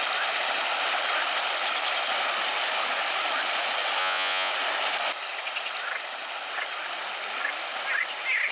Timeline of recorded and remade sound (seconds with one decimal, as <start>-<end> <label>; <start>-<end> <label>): 0.0-4.0 recorded; 4.0-4.5 remade; 4.5-8.5 recorded

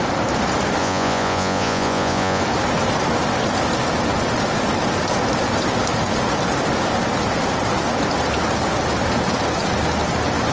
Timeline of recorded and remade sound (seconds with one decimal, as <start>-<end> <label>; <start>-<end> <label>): 0.0-0.8 recorded; 0.8-2.4 remade; 2.4-10.5 recorded